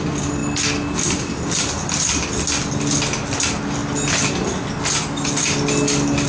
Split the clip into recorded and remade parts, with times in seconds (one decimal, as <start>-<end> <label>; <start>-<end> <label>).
0.0-6.3 recorded